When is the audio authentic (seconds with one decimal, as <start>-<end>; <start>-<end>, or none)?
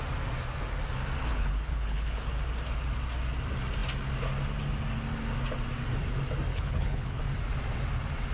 0.0-1.2; 2.3-6.5; 7.2-8.3